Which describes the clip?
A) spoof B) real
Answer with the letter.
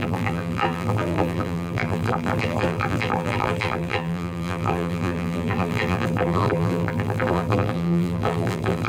A